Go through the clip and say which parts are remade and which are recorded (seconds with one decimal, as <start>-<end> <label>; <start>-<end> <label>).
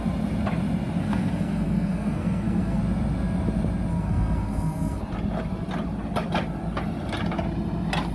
0.0-1.0 recorded; 1.0-2.8 remade; 2.8-3.9 recorded; 3.9-5.0 remade; 5.0-8.1 recorded